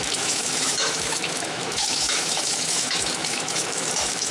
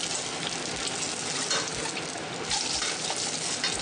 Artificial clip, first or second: first